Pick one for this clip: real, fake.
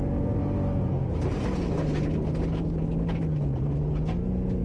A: real